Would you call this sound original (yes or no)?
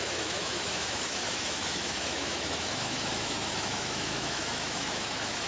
no